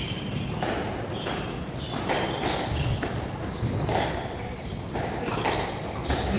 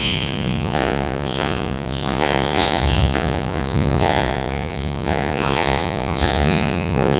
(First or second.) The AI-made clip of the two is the second